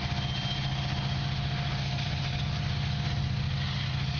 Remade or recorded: recorded